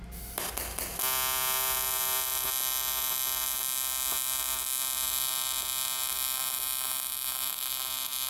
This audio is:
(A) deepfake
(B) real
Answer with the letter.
B